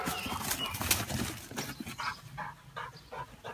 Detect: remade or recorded recorded